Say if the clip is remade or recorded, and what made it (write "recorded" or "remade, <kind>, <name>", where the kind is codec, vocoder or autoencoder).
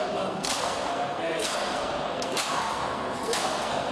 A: remade, codec, SNAC